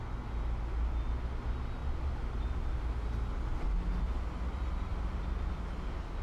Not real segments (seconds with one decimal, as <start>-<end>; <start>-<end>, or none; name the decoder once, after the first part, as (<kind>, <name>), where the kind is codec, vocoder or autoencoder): none